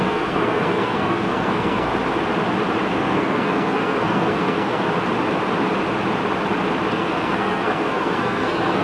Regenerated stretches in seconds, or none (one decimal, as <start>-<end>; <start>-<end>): 0.0-1.9; 2.9-4.9; 6.9-8.8